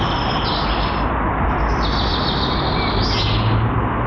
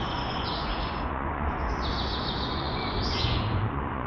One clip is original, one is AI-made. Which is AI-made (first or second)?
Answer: second